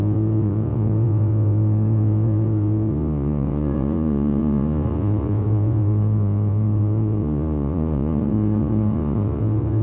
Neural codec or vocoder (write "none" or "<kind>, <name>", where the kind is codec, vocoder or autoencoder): vocoder, Vocos